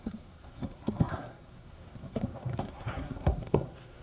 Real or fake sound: fake